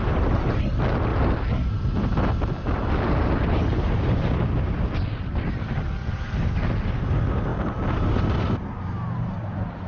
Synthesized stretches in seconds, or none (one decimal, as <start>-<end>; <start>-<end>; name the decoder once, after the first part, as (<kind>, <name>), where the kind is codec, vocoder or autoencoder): none